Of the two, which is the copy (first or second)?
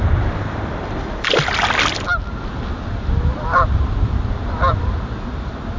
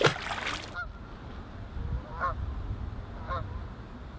first